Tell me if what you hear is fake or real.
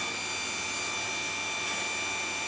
real